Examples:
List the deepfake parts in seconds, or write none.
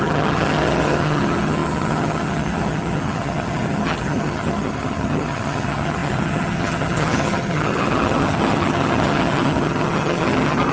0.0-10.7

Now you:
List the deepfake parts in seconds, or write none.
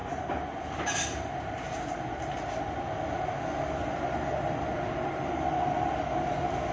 none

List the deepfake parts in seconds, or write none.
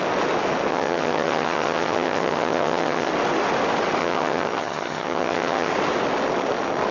0.7-3.1; 4.0-5.7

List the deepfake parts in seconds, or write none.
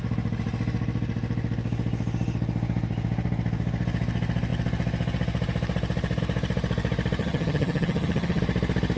7.2-8.4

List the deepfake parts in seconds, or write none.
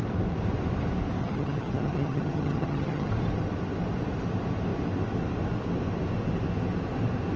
1.2-3.1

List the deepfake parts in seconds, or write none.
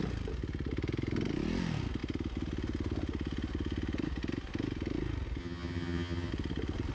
5.4-6.3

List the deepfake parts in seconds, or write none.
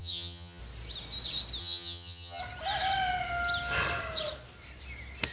0.0-0.6; 1.6-2.4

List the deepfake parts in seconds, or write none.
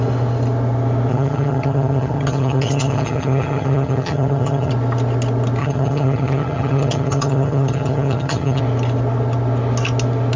1.1-4.7; 5.6-8.6